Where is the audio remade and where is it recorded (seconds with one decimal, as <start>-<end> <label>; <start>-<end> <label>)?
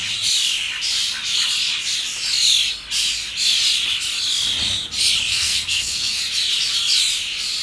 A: 0.0-5.3 recorded; 5.3-6.2 remade; 6.2-7.6 recorded